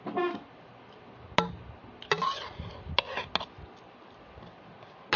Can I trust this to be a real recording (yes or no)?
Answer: yes